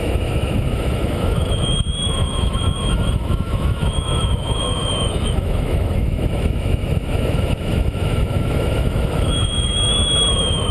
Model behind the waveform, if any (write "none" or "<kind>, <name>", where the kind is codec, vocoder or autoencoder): autoencoder, DAC-VAE